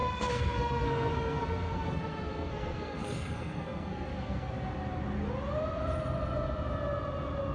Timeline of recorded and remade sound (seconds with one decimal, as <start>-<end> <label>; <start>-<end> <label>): 0.0-4.5 remade; 4.5-7.5 recorded